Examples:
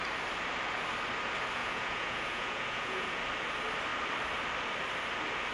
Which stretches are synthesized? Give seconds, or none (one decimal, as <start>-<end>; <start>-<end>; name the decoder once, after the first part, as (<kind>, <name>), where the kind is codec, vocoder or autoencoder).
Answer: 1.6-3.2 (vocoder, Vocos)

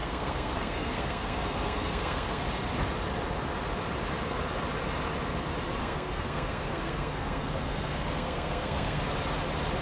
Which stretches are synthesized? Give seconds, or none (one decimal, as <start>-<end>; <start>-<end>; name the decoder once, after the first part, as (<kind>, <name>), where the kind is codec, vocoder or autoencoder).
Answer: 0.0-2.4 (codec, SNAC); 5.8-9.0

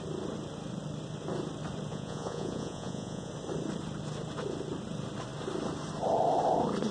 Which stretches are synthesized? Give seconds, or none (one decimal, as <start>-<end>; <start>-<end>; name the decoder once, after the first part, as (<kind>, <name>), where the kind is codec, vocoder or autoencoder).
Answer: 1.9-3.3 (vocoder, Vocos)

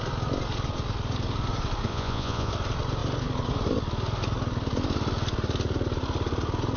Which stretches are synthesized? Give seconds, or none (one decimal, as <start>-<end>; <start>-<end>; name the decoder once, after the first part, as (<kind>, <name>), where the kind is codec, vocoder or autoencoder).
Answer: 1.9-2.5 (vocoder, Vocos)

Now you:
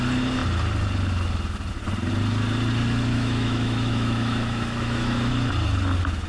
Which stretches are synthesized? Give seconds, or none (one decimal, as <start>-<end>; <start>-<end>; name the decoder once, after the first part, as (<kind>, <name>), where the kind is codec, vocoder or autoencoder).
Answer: 3.1-5.3 (autoencoder, DAC-VAE)

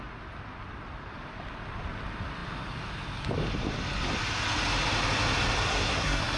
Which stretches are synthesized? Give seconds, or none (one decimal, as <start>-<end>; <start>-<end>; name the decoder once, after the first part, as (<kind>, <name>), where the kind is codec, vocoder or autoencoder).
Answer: 5.7-6.4 (codec, SNAC)